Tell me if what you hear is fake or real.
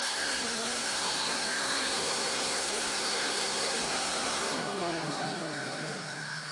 fake